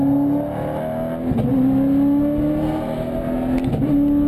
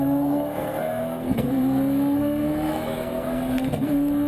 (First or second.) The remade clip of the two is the second